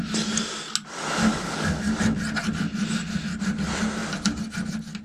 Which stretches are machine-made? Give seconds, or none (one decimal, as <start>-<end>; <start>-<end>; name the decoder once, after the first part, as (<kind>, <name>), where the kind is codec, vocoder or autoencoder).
1.3-2.0 (codec, DAC)